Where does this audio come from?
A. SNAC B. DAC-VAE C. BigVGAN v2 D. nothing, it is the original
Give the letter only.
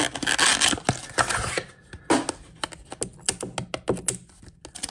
D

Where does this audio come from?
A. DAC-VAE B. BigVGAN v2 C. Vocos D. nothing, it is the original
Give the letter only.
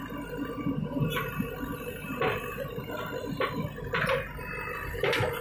D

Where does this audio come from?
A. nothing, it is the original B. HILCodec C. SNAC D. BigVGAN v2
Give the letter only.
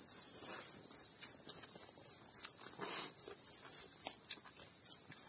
A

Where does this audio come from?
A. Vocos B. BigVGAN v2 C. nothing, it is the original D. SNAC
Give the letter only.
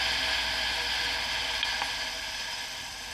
C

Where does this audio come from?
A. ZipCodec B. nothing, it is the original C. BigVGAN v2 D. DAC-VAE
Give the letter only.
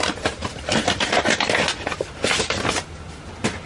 B